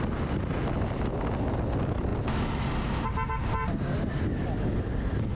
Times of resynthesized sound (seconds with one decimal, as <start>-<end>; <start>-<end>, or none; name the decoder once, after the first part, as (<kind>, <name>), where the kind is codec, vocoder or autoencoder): none